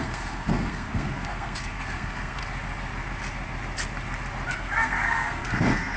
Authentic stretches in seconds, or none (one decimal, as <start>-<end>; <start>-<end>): 2.4-4.5